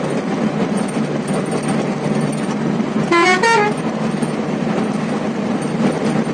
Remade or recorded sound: recorded